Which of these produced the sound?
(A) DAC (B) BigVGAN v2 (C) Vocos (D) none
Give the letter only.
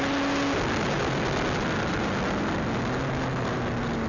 D